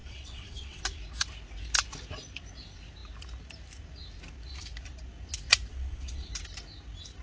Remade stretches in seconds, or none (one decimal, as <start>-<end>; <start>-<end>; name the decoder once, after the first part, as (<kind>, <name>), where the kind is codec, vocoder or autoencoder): 0.0-0.8 (vocoder, WaveNeXt); 5.7-6.3